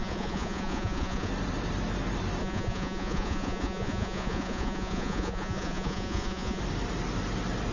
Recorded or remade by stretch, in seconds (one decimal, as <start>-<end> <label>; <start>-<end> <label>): 0.0-1.3 remade; 1.3-2.4 recorded; 2.4-6.6 remade; 6.6-7.7 recorded